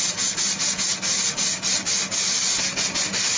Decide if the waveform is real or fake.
real